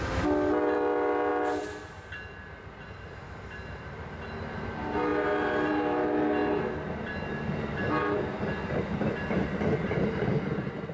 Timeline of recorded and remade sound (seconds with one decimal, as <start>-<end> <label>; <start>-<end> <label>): 0.0-10.9 recorded